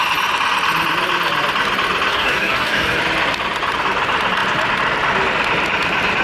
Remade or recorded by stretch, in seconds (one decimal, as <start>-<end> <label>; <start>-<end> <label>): 0.0-2.1 recorded; 2.1-3.0 remade; 3.0-6.2 recorded